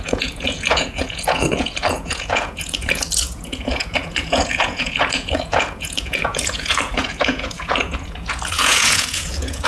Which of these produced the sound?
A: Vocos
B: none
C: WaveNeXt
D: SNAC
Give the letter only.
A